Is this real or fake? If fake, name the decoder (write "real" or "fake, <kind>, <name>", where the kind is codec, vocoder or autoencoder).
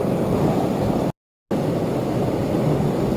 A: real